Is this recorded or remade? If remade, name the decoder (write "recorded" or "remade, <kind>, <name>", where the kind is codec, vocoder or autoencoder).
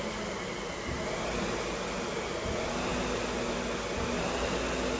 recorded